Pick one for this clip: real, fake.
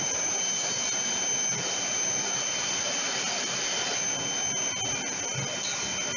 real